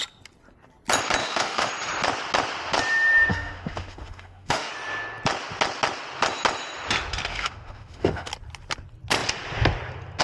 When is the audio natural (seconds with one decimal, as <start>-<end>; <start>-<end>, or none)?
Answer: 0.0-1.2; 1.7-3.3; 4.7-7.3; 8.3-10.2